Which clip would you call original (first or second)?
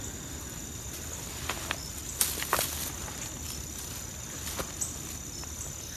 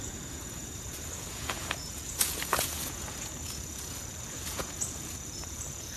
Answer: first